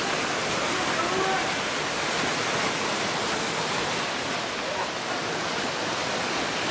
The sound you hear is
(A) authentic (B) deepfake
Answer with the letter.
A